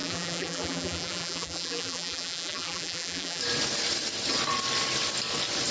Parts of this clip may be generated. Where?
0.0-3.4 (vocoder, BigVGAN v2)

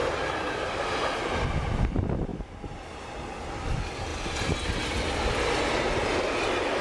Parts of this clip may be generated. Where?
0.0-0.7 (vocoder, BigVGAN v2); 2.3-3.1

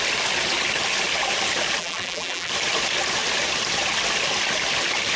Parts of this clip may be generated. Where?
1.8-2.5 (vocoder, BigVGAN v2)